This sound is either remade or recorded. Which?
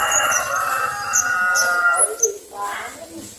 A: recorded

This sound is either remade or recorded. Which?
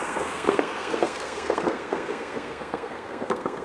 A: remade